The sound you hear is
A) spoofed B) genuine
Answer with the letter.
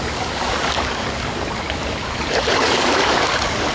A